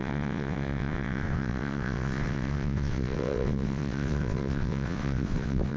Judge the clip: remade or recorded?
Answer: remade